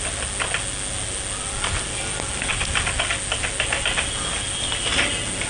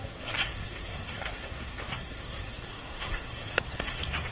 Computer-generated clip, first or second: second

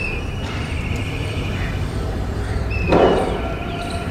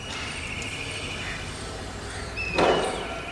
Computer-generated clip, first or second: first